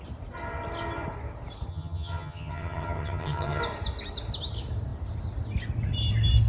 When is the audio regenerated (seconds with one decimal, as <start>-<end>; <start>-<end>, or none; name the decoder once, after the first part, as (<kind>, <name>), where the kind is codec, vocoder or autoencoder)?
1.7-3.6 (vocoder, HiFi-GAN)